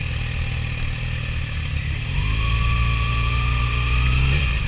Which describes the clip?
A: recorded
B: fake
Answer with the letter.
A